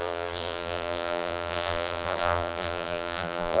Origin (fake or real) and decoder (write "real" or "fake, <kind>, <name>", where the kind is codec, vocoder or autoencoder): fake, vocoder, BigVGAN v2